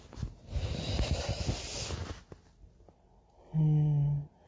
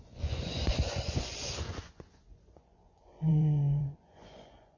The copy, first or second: second